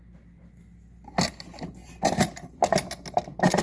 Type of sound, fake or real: real